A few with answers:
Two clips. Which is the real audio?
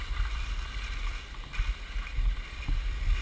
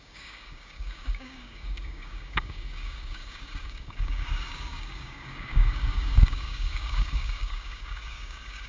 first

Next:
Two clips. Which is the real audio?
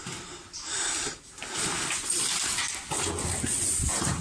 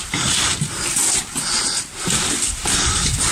first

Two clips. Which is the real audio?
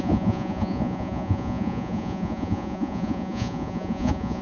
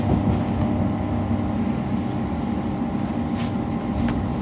second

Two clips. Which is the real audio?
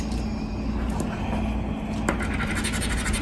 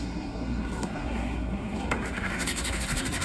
first